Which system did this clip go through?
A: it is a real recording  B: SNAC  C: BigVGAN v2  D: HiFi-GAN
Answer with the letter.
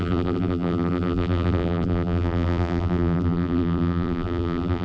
C